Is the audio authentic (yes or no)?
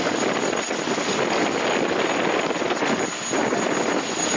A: yes